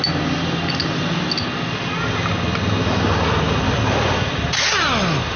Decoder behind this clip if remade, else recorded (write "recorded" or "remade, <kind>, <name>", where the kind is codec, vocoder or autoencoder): recorded